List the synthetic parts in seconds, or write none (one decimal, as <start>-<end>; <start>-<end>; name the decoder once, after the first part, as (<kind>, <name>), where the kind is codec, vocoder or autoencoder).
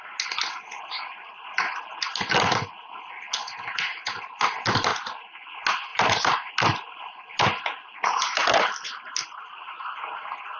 4.9-5.5 (vocoder, BigVGAN v2); 5.9-6.5